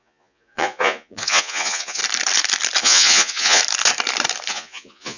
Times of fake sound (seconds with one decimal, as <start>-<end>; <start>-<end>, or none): 0.0-2.0; 2.8-3.6; 4.5-5.2